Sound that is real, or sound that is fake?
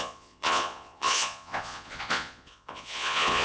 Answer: fake